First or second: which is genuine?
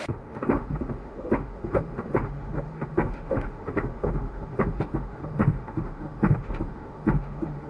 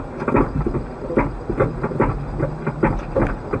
second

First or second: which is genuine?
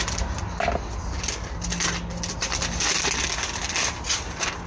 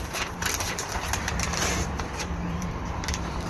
first